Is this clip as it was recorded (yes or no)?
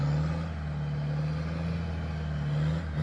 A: yes